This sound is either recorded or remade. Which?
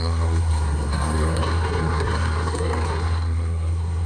remade